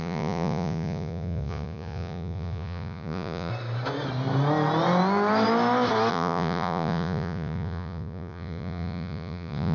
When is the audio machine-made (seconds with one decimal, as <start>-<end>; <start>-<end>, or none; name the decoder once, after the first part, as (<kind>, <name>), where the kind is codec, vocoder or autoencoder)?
0.0-3.5 (vocoder, Vocos); 6.1-9.7